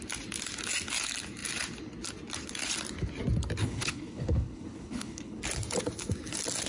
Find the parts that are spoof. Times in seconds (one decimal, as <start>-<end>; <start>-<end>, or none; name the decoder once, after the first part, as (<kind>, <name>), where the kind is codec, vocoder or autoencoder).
3.6-5.4 (codec, HILCodec)